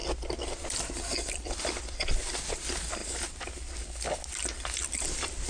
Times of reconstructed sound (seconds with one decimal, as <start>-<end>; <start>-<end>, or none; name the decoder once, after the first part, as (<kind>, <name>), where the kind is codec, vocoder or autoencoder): none